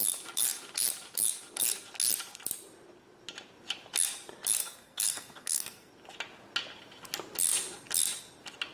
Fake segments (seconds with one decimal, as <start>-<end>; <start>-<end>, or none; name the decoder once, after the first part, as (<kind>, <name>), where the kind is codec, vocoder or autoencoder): 4.6-5.9 (codec, SNAC)